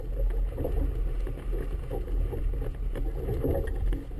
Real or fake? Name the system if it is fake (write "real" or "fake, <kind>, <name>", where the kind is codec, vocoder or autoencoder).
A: real